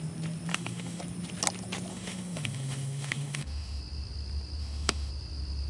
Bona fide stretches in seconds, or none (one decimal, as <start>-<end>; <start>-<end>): 0.0-0.5; 1.0-1.9; 3.8-4.6; 5.1-5.7